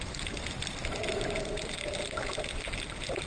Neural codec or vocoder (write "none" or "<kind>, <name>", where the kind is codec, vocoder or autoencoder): none